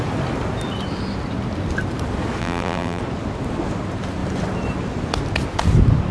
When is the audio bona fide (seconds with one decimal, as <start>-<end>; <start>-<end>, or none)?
0.0-2.4; 3.0-6.1